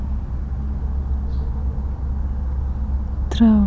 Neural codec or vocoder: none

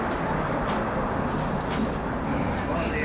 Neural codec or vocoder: none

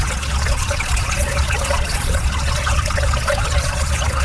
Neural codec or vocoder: vocoder, Vocos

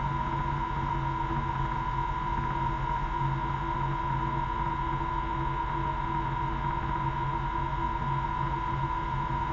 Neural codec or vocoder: none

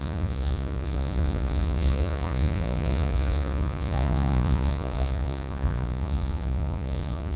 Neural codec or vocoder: vocoder, Vocos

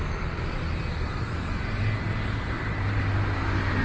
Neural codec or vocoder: none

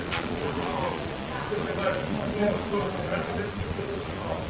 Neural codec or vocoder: vocoder, Vocos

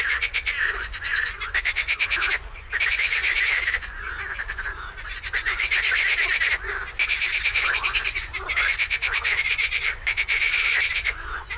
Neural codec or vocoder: vocoder, Vocos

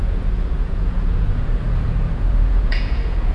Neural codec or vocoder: vocoder, Vocos